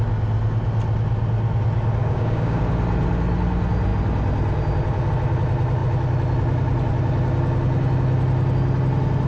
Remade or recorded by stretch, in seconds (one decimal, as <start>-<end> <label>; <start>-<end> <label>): 0.0-2.0 recorded; 2.0-2.6 remade; 2.6-9.3 recorded